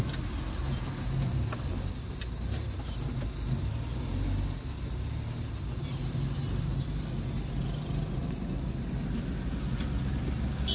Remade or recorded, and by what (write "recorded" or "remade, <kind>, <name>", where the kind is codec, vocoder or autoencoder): recorded